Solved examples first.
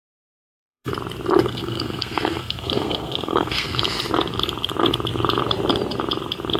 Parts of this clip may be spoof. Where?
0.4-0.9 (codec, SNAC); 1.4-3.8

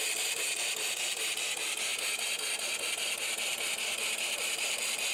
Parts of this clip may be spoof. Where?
none

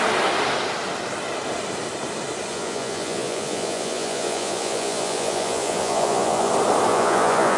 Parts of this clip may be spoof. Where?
2.5-6.5 (vocoder, Vocos); 6.9-7.6

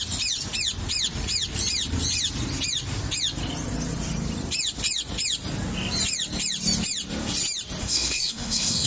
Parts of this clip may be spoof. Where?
7.8-8.9 (codec, SNAC)

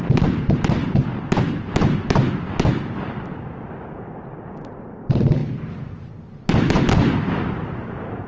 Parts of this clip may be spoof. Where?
0.0-0.8 (vocoder, BigVGAN v2); 4.8-5.4; 7.4-8.3

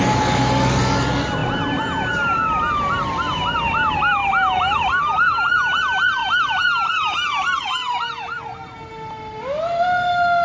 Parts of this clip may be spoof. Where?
none

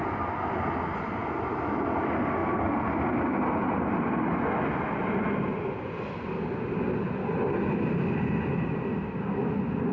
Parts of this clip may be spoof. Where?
none

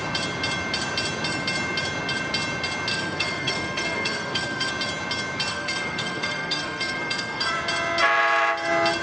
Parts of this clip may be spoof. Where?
2.9-4.7 (codec, SNAC); 5.5-7.5